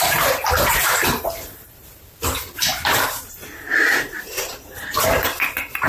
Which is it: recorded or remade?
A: remade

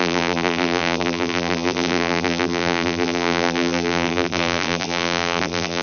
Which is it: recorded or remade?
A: remade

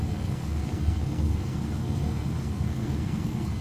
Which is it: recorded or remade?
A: remade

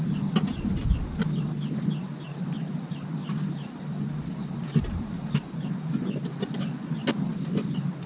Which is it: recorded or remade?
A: recorded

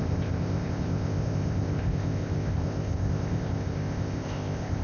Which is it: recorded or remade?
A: remade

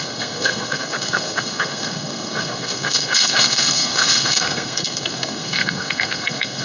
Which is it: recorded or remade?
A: remade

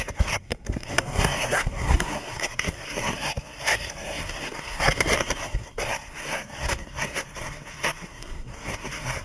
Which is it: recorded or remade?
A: remade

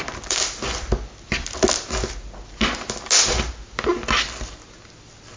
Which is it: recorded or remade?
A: recorded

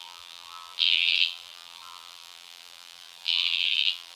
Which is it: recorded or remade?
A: remade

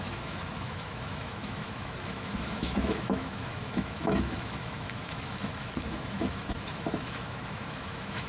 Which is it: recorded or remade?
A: remade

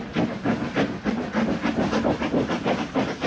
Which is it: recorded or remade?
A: recorded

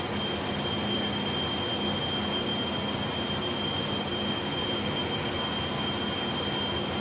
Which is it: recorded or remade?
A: recorded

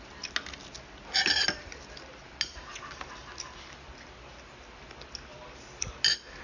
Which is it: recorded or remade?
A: recorded